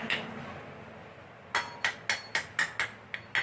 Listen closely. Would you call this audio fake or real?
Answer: real